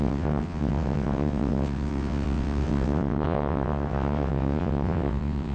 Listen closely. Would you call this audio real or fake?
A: fake